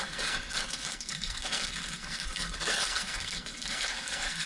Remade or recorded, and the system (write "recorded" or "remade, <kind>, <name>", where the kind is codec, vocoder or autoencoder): remade, codec, SNAC